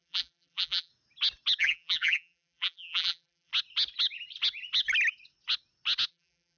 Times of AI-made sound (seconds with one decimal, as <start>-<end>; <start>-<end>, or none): 0.0-0.9; 1.6-3.5; 6.1-6.6